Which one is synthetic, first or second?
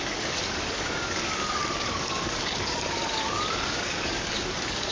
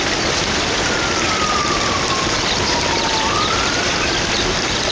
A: first